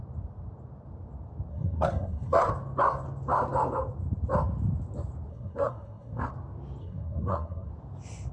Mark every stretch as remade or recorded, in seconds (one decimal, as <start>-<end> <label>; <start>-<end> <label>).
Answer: 0.0-1.5 recorded; 1.5-2.5 remade; 2.5-5.3 recorded; 5.3-6.3 remade; 6.3-6.8 recorded; 6.8-7.7 remade; 7.7-8.3 recorded